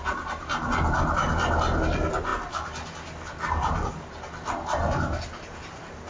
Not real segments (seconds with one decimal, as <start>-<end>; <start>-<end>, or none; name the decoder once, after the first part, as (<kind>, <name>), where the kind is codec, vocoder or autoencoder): none